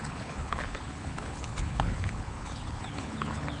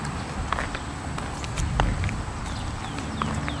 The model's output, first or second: first